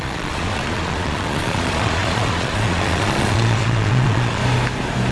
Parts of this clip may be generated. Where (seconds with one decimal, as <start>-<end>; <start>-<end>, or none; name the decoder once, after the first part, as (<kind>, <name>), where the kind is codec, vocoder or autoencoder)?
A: 0.0-4.4 (vocoder, Vocos)